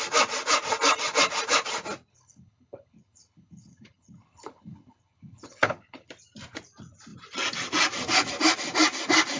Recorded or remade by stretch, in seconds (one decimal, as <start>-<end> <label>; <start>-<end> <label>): 0.0-2.1 recorded; 2.1-6.1 remade; 6.1-9.4 recorded